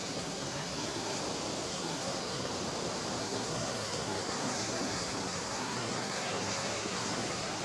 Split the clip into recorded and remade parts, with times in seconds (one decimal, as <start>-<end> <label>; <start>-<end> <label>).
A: 0.0-1.2 remade; 1.2-1.7 recorded; 1.7-2.5 remade; 2.5-3.2 recorded; 3.2-7.6 remade

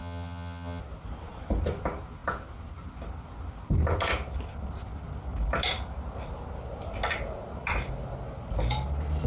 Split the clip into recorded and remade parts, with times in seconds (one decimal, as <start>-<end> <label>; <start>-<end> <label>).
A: 0.0-0.8 remade; 0.8-9.3 recorded

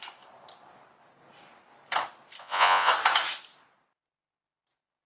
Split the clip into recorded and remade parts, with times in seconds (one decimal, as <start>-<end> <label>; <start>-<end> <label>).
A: 0.0-2.4 recorded; 2.4-2.9 remade; 2.9-5.1 recorded

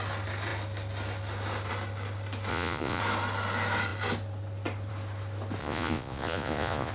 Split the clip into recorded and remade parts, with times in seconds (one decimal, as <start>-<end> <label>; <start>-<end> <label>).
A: 0.0-2.5 recorded; 2.5-3.0 remade; 3.0-5.6 recorded; 5.6-6.9 remade

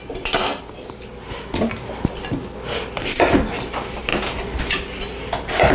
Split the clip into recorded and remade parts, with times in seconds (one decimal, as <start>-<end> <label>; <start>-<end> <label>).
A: 0.0-5.7 recorded

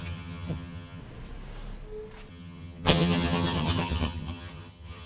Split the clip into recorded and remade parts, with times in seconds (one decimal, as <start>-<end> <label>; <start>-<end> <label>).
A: 0.0-1.0 remade; 1.0-2.3 recorded; 2.3-5.1 remade

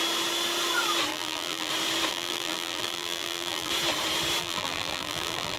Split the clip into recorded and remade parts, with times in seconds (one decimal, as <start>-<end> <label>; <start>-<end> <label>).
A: 0.0-1.1 recorded; 1.1-1.7 remade; 1.7-2.1 recorded; 2.1-3.7 remade; 3.7-4.4 recorded; 4.4-5.6 remade

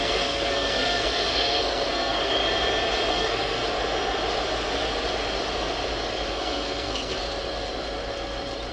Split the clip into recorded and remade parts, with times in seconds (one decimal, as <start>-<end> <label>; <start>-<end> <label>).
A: 0.0-2.4 remade; 2.4-3.1 recorded; 3.1-3.6 remade; 3.6-6.3 recorded; 6.3-7.2 remade; 7.2-8.7 recorded